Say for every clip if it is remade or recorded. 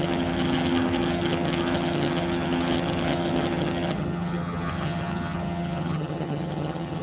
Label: remade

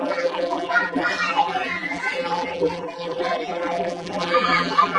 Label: remade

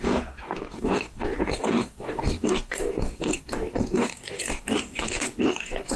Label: remade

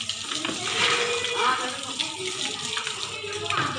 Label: recorded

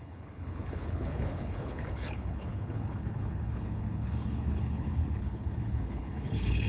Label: remade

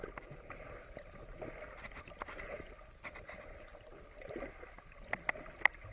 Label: recorded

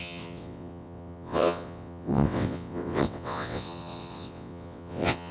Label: remade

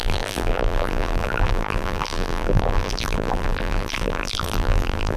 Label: remade